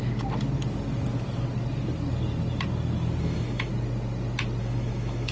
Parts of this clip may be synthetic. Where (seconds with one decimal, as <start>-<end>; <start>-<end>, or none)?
3.2-3.7; 4.6-5.3